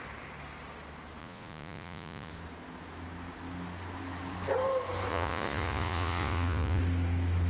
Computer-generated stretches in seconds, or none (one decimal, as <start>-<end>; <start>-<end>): 1.2-2.3; 5.1-6.8